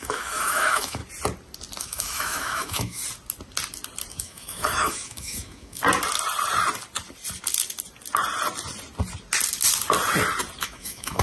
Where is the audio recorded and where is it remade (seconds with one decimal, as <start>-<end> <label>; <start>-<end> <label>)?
0.0-1.0 remade; 1.0-1.8 recorded; 1.8-3.0 remade; 3.0-4.1 recorded; 4.1-5.8 remade; 5.8-10.6 recorded; 10.6-11.2 remade

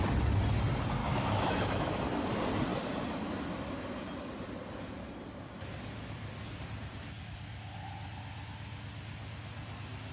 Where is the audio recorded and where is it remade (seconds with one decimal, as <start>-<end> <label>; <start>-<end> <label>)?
0.0-1.0 recorded; 1.0-2.0 remade; 2.0-10.1 recorded

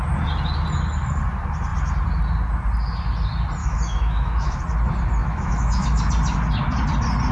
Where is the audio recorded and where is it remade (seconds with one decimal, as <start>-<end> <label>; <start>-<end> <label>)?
0.0-3.6 recorded; 3.6-4.6 remade; 4.6-5.2 recorded; 5.2-6.1 remade; 6.1-7.3 recorded